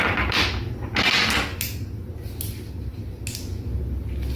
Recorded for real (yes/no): yes